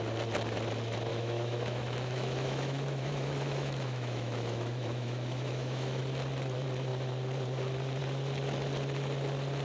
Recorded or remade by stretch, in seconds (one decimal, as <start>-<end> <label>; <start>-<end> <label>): 0.0-1.1 recorded; 1.1-6.0 remade; 6.0-9.6 recorded